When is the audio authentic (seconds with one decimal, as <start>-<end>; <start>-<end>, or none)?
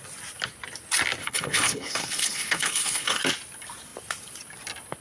0.0-1.2; 3.2-5.0